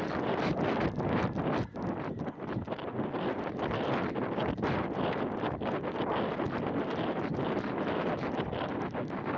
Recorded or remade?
recorded